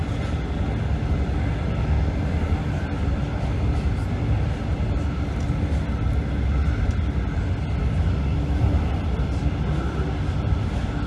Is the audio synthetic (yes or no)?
no